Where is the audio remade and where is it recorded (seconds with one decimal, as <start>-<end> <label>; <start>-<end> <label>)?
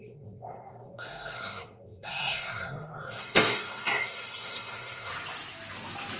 0.0-5.1 remade; 5.1-6.2 recorded